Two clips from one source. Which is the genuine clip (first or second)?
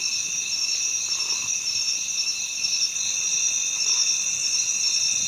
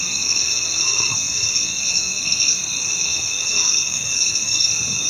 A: first